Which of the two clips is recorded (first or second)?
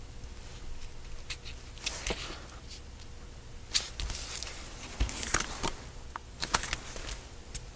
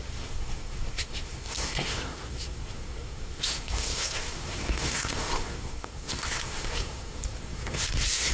first